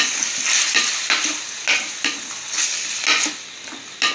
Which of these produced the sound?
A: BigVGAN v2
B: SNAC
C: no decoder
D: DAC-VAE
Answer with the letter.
C